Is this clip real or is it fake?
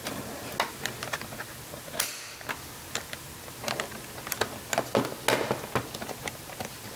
real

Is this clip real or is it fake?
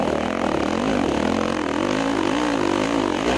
real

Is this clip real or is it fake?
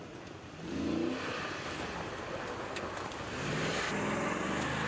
real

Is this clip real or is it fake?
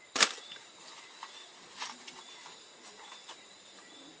fake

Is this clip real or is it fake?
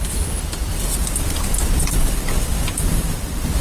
fake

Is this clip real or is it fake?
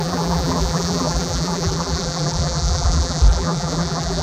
fake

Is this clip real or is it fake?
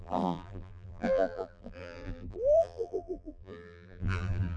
fake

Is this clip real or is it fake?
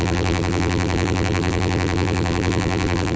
fake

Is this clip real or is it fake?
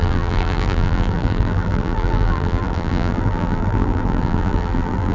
fake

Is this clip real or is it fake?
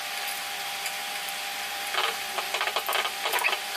fake